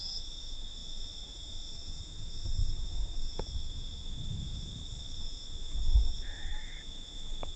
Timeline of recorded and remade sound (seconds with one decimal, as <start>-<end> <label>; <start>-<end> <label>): 0.0-7.6 remade